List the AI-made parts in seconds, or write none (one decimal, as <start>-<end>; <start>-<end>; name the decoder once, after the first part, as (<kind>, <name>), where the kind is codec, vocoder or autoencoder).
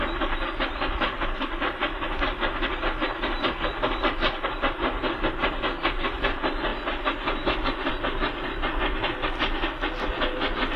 none